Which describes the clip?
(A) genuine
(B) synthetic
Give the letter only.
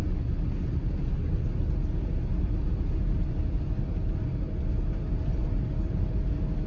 A